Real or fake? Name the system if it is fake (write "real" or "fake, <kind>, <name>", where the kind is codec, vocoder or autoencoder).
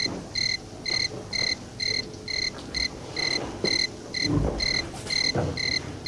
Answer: real